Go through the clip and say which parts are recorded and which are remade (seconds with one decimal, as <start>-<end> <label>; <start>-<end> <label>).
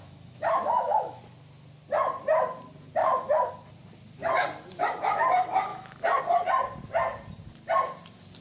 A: 0.0-1.2 remade; 1.2-3.0 recorded; 3.0-3.5 remade; 3.5-5.7 recorded; 5.7-6.2 remade; 6.2-8.4 recorded